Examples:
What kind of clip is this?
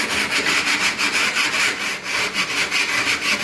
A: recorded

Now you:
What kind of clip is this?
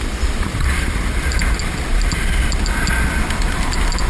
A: recorded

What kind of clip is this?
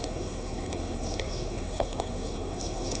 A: remade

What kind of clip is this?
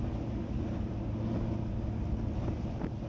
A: recorded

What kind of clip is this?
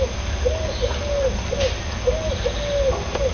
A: recorded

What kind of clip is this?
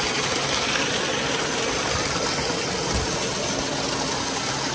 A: recorded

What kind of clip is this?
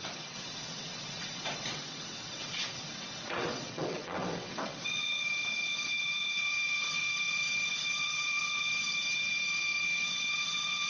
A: remade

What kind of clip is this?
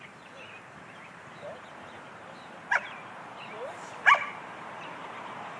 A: remade